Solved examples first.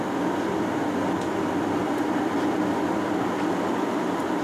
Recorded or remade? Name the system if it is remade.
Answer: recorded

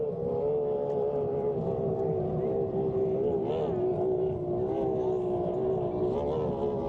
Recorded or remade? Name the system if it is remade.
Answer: recorded